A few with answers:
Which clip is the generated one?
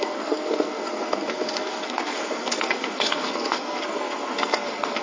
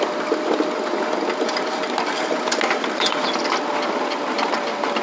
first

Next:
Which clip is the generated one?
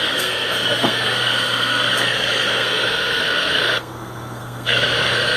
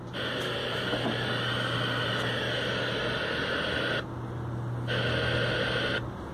first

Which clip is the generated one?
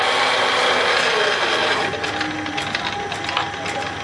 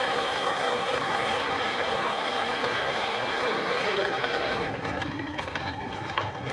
second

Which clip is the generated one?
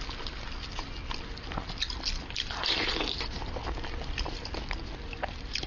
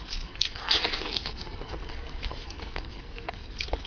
second